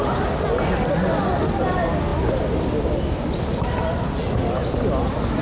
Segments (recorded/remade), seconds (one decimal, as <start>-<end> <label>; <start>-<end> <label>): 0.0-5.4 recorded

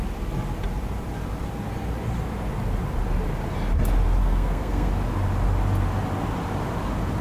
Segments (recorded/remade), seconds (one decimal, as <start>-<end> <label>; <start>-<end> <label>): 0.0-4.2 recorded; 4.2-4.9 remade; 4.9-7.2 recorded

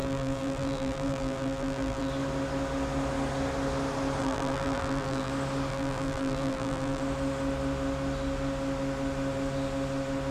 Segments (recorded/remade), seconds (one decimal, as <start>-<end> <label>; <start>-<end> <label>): 0.0-2.1 remade; 2.1-4.2 recorded; 4.2-5.3 remade; 5.3-5.7 recorded; 5.7-7.0 remade; 7.0-10.3 recorded

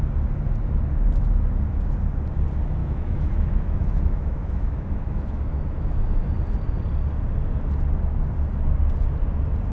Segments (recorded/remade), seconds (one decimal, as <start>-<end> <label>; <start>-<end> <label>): 0.0-2.8 recorded; 2.8-6.3 remade; 6.3-9.7 recorded

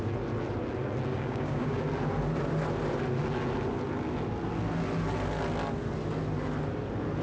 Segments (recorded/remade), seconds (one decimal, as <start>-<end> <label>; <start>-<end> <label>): 0.0-1.1 recorded; 1.1-1.8 remade; 1.8-7.2 recorded

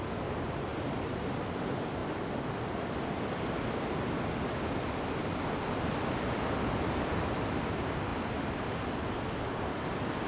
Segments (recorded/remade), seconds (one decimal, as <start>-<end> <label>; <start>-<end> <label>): 0.0-10.3 recorded

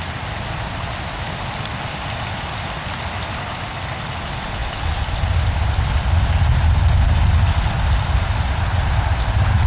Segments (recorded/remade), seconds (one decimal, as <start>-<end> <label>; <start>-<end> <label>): 0.0-9.7 recorded